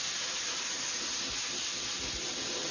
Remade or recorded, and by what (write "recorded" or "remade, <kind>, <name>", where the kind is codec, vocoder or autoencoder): recorded